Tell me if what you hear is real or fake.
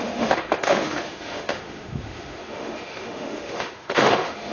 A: fake